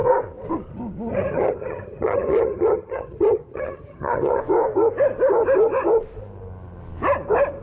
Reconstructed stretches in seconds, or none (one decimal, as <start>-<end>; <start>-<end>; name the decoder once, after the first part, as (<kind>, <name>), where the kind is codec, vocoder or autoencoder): 1.1-4.4 (vocoder, HiFi-GAN)